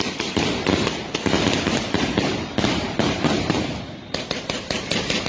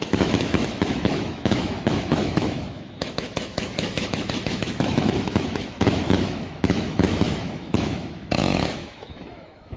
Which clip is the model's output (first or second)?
second